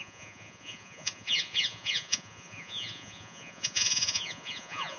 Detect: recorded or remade remade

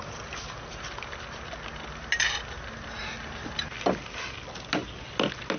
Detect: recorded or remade recorded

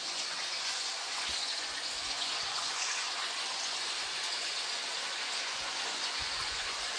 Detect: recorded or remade remade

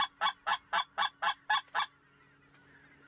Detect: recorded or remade recorded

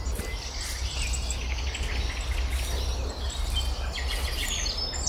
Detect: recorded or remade recorded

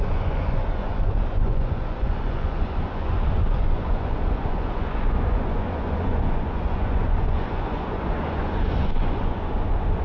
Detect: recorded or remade remade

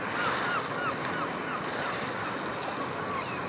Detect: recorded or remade recorded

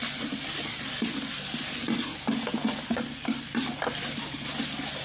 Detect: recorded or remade recorded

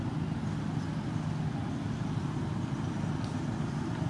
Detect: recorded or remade recorded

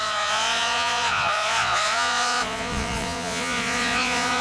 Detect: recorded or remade remade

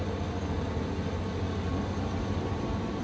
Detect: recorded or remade recorded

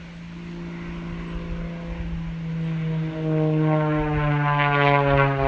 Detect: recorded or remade recorded